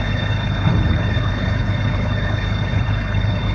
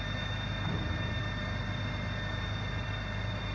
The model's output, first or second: first